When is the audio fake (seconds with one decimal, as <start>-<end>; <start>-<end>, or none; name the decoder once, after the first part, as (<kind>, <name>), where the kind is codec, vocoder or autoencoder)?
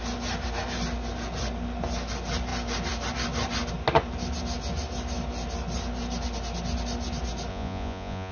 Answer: 7.5-8.3 (vocoder, Vocos)